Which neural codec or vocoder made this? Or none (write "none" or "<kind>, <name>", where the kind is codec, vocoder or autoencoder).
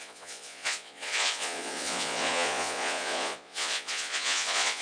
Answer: vocoder, Vocos